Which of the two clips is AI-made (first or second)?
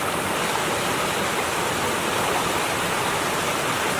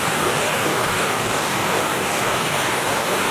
second